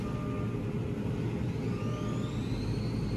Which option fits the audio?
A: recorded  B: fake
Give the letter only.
A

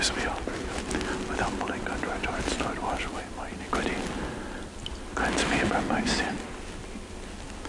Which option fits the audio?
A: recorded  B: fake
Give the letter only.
A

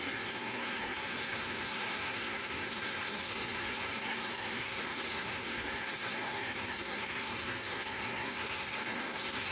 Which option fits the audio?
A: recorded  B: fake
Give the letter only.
B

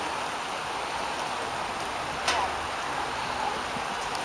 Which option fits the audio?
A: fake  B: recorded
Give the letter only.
B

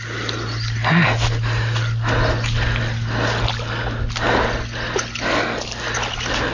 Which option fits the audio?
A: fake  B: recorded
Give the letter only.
B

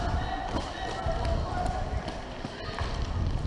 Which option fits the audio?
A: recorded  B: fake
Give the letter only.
A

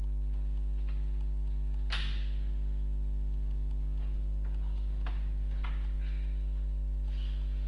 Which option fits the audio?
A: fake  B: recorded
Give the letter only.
B